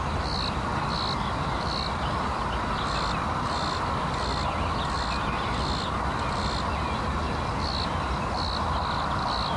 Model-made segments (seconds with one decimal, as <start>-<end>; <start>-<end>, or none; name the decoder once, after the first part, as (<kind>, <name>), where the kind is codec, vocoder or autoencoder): none